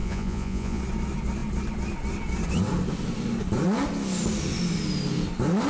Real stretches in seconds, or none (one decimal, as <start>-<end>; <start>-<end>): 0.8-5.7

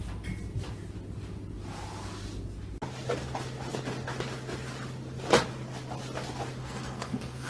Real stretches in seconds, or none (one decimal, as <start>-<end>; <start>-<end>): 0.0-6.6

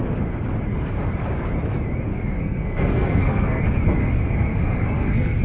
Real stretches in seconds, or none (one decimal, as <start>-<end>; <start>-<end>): 0.0-2.1; 3.6-4.0

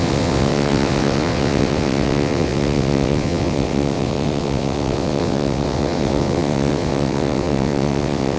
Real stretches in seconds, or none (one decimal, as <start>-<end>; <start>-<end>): none

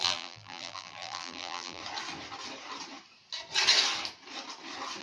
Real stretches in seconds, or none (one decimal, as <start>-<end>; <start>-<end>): 1.8-5.0

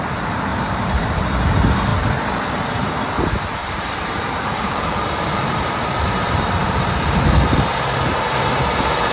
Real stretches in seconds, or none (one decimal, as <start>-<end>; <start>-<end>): 0.0-0.5; 1.0-3.6; 6.9-9.1